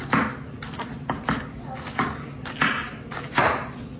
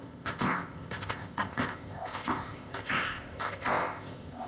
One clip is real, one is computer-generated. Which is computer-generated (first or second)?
second